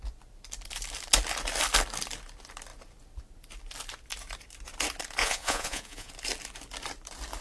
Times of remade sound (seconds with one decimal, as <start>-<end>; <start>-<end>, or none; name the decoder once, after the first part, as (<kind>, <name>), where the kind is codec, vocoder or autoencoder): 5.2-6.1 (vocoder, Vocos)